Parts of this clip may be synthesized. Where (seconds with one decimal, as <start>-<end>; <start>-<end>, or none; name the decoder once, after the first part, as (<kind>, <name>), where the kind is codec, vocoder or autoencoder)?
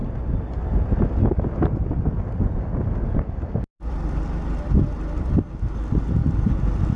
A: none